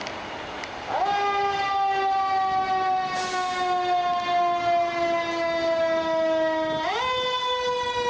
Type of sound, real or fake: real